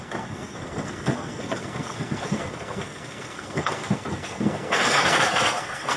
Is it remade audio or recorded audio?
remade